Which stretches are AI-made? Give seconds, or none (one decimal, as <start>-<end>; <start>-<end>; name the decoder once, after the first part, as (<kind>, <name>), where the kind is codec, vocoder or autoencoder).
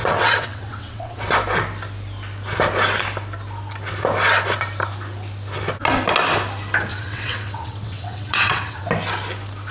0.0-1.2 (vocoder, WaveNeXt); 6.9-8.8